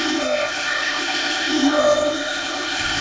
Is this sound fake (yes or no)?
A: yes